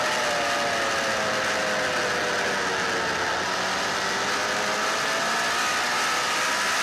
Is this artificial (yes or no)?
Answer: no